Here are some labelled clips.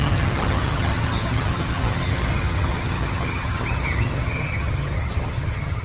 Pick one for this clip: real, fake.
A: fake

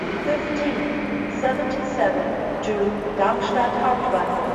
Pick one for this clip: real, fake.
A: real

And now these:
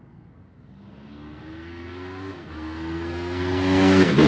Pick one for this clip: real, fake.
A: fake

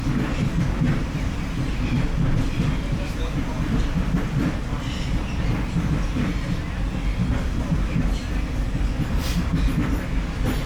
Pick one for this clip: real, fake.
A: real